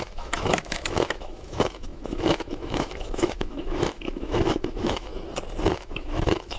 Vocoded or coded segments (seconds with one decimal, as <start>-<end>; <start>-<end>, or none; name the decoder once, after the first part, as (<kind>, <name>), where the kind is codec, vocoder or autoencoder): 0.0-5.1 (autoencoder, DAC-VAE); 5.7-6.6

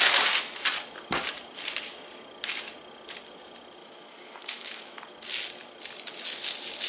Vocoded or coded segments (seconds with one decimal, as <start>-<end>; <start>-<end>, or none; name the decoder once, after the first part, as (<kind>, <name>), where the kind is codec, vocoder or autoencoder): 3.8-5.0 (autoencoder, DAC-VAE)